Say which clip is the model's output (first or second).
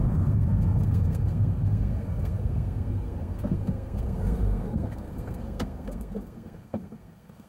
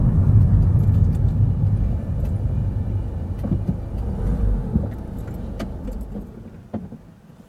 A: first